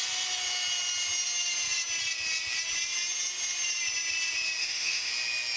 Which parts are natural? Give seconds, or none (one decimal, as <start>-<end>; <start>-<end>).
0.0-4.6; 5.1-5.6